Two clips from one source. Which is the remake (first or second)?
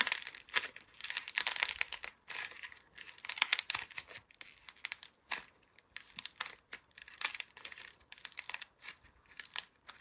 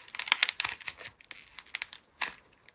first